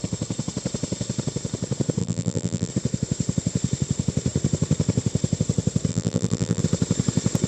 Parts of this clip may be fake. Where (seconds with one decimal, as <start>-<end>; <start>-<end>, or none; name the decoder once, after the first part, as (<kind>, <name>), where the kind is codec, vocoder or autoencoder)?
2.0-2.7 (vocoder, BigVGAN v2); 5.9-6.6